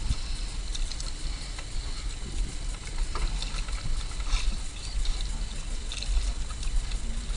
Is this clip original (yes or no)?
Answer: yes